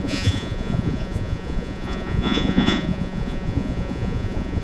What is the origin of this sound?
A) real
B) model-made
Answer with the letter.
B